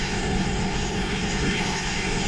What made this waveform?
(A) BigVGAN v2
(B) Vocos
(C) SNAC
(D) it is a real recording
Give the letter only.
C